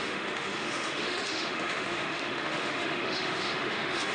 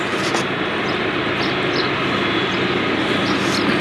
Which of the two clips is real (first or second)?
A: second